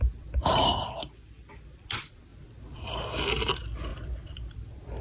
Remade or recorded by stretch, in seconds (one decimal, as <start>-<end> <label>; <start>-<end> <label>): 0.0-3.9 recorded; 3.9-5.0 remade